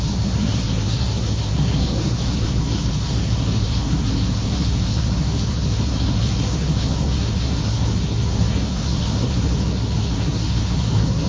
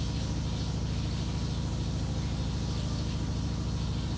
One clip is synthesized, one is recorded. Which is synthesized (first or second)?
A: first